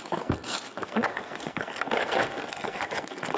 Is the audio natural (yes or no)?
no